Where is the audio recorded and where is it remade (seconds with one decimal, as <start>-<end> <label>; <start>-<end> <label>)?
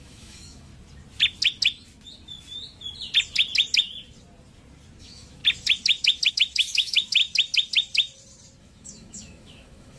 0.0-0.7 remade; 0.7-5.0 recorded; 5.0-5.4 remade; 5.4-6.3 recorded; 6.3-7.2 remade; 7.2-8.6 recorded; 8.6-10.0 remade